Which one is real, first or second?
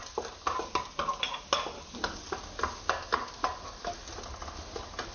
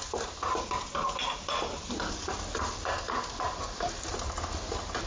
first